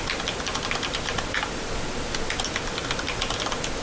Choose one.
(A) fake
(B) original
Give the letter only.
B